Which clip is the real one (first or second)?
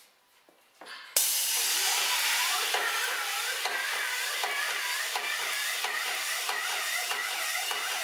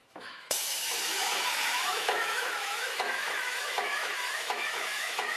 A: first